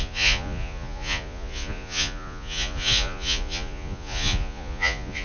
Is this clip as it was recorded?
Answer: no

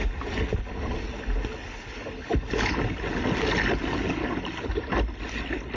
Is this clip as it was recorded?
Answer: yes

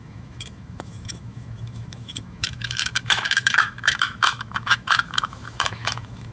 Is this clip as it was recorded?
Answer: no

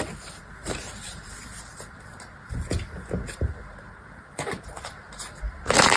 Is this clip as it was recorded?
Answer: no